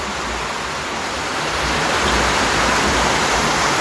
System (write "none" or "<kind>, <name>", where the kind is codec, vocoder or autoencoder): vocoder, BigVGAN v2